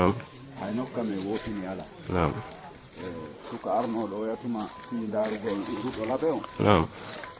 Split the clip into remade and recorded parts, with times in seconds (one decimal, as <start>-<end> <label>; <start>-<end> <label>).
0.0-1.1 remade; 1.1-5.1 recorded; 5.1-5.6 remade; 5.6-6.1 recorded; 6.1-7.4 remade

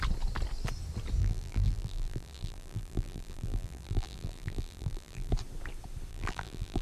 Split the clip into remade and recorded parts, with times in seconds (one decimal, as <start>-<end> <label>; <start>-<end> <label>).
0.0-1.2 recorded; 1.2-5.3 remade; 5.3-6.1 recorded; 6.1-6.8 remade

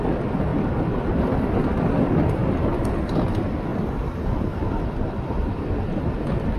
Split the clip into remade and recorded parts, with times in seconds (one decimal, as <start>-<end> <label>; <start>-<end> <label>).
0.0-0.5 recorded; 0.5-2.5 remade; 2.5-3.7 recorded; 3.7-5.9 remade; 5.9-6.6 recorded